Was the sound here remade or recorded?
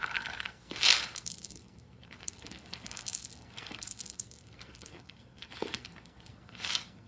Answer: remade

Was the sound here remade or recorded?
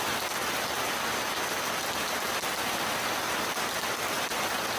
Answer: recorded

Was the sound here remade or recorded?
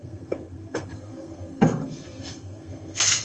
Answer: remade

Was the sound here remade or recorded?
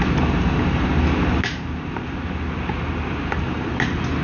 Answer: recorded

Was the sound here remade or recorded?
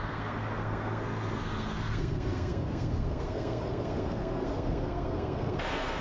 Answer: remade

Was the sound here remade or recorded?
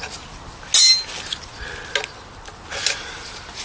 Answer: recorded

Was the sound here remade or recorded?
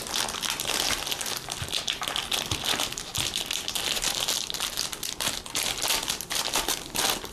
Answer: recorded